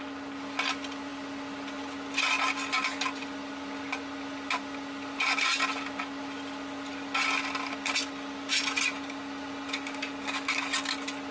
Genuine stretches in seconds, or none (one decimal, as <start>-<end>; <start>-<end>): 0.0-11.3